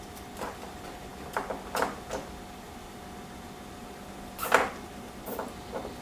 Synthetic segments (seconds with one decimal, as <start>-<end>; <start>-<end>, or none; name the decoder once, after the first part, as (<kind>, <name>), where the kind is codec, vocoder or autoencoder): none